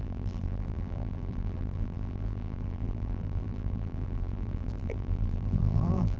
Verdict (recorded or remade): remade